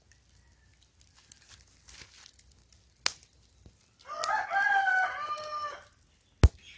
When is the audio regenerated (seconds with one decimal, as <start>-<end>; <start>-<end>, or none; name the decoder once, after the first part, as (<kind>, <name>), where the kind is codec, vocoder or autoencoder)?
none